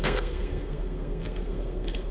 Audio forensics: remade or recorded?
remade